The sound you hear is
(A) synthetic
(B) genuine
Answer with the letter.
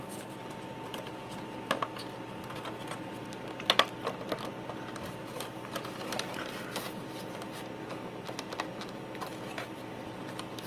B